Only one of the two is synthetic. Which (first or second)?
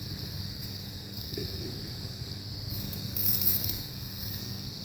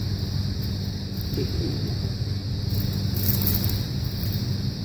first